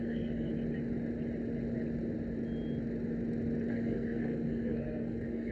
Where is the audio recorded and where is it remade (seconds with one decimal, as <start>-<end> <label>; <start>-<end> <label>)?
0.0-0.5 remade; 0.5-3.7 recorded; 3.7-5.5 remade